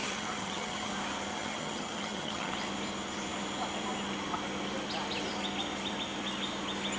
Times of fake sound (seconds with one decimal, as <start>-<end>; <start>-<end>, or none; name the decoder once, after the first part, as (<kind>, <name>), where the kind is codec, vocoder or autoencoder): 0.0-0.9 (vocoder, HiFi-GAN); 1.3-2.5